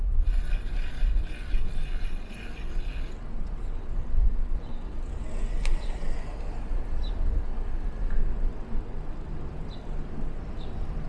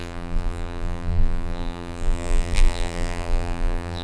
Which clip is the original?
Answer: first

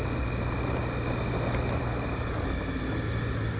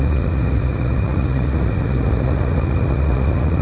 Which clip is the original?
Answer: first